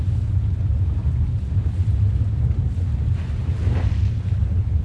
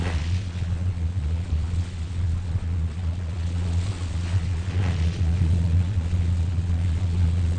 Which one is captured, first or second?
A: first